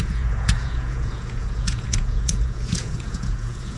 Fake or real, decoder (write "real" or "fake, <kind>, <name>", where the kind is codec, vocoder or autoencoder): fake, vocoder, Vocos